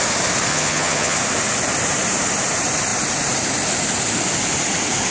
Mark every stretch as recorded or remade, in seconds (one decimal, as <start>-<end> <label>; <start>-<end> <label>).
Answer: 0.0-0.5 recorded; 0.5-1.2 remade; 1.2-5.1 recorded